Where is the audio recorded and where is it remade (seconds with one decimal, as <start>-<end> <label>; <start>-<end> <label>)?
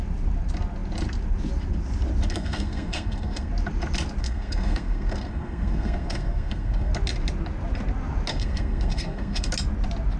0.0-2.3 recorded; 2.3-3.5 remade; 3.5-4.2 recorded; 4.2-6.9 remade; 6.9-8.3 recorded; 8.3-9.5 remade; 9.5-10.2 recorded